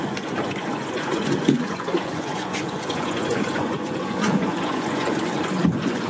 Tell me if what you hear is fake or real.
fake